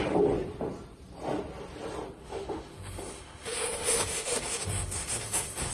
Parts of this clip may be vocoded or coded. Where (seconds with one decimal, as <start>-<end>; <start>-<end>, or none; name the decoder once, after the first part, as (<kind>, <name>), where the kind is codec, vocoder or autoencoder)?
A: 2.2-5.7 (autoencoder, DAC-VAE)